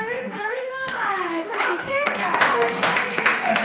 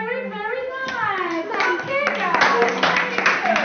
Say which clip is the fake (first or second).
first